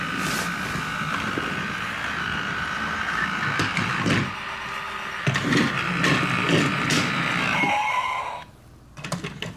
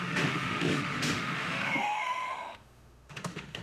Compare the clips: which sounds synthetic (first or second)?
second